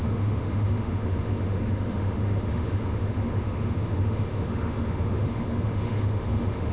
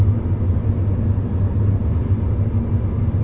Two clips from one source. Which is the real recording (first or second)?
second